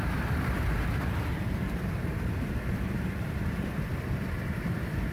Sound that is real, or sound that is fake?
fake